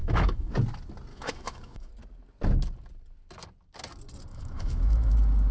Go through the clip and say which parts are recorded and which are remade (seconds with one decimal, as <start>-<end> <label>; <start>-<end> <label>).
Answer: 0.0-0.5 remade; 0.5-1.1 recorded; 1.1-1.9 remade; 1.9-4.3 recorded; 4.3-5.1 remade; 5.1-5.5 recorded